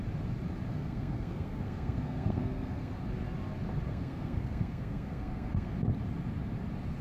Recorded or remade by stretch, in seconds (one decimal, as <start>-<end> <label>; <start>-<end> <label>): 0.0-0.7 recorded; 0.7-3.0 remade; 3.0-3.9 recorded; 3.9-5.7 remade; 5.7-7.0 recorded